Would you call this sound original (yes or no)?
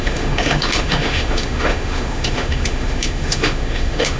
no